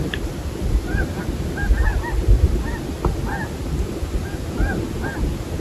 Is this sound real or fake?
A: real